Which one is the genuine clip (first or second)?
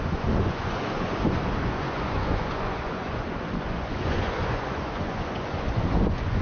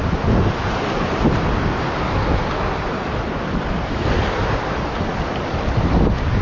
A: second